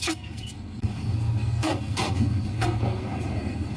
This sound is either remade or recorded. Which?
remade